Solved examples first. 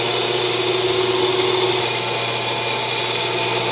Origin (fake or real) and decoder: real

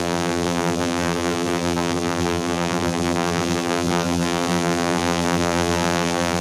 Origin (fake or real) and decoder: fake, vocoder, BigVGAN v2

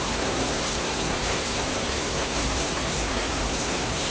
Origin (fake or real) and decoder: fake, codec, SNAC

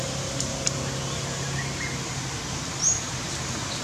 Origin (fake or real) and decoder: real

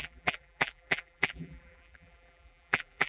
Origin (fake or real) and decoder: fake, vocoder, BigVGAN v2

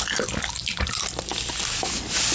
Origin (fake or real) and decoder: real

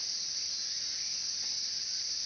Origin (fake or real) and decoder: real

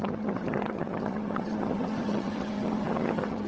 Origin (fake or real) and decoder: fake, vocoder, HiFi-GAN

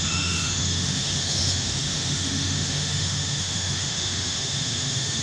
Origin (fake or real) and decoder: fake, autoencoder, DAC-VAE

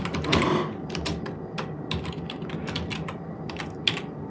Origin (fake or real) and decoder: real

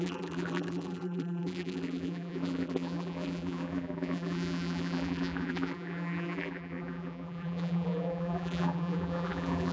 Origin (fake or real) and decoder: fake, vocoder, BigVGAN v2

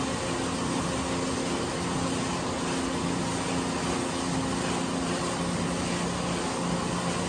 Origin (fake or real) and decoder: real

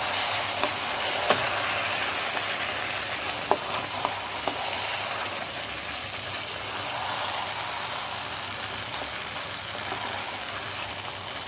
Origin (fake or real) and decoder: real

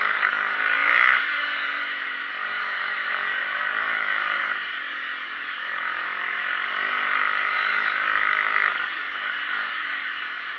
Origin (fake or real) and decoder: fake, codec, DAC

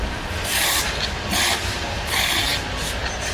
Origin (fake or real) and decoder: fake, vocoder, BigVGAN v2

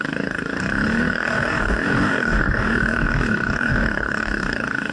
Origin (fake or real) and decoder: fake, codec, DAC